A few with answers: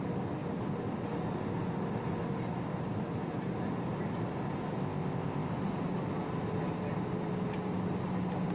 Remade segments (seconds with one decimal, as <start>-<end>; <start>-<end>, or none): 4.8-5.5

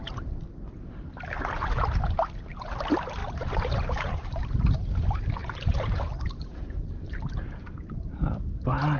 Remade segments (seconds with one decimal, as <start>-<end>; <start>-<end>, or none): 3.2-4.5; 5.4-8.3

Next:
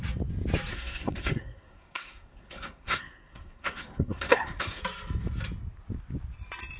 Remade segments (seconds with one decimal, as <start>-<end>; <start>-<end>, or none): 0.7-4.8

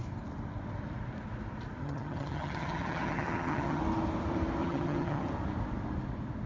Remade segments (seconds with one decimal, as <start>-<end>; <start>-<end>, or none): 1.8-3.8; 4.6-5.3

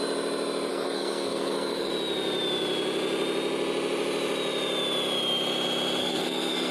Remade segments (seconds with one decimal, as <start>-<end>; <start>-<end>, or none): 0.7-1.9; 6.0-6.7